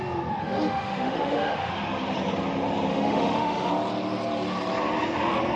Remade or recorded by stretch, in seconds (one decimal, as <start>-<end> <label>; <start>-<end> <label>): 0.0-0.4 recorded; 0.4-1.7 remade; 1.7-2.9 recorded; 2.9-3.7 remade; 3.7-5.6 recorded